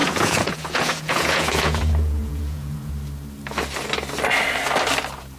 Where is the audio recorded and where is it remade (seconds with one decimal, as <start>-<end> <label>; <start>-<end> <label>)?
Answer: 0.0-2.9 remade; 2.9-5.4 recorded